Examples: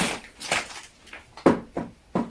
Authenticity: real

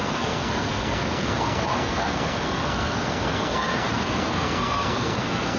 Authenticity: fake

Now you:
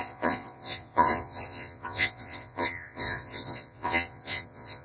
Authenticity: fake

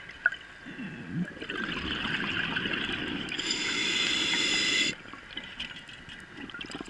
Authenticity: real